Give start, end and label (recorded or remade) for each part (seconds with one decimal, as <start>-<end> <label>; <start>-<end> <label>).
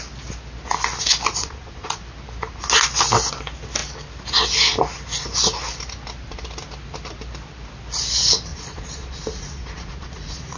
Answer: 0.0-1.4 recorded; 1.4-2.0 remade; 2.0-8.5 recorded; 8.5-10.6 remade